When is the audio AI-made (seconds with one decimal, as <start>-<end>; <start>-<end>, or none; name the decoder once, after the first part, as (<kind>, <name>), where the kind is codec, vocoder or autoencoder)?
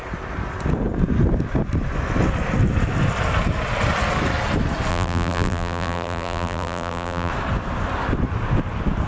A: 4.9-7.3 (vocoder, BigVGAN v2)